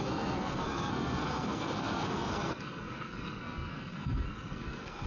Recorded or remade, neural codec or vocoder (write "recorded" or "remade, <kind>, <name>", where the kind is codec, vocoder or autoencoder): remade, codec, SNAC